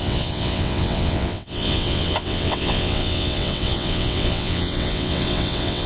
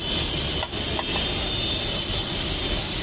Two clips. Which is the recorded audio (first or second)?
second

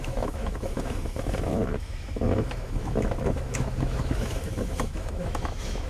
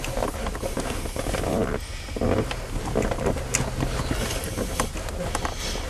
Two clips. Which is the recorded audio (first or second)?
second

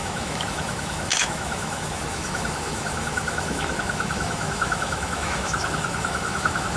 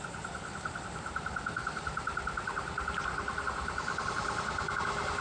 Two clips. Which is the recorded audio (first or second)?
second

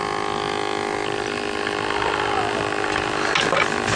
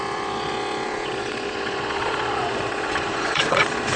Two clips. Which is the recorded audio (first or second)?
first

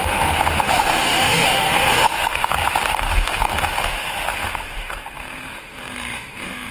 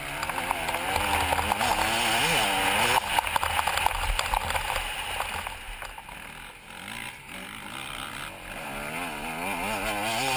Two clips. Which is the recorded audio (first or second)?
second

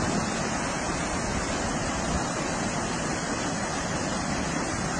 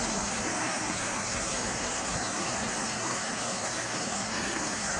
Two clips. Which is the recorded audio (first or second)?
first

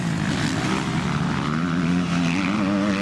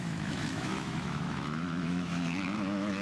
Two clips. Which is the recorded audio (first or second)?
first